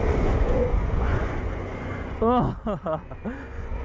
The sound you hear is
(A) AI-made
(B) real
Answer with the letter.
A